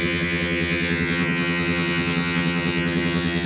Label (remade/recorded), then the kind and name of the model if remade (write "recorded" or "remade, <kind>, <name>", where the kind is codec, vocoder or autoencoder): remade, vocoder, HiFi-GAN